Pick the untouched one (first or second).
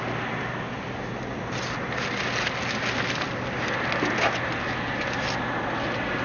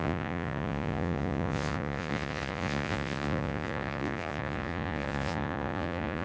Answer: first